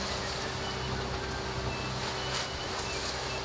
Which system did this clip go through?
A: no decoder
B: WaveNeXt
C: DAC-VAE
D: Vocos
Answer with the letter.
A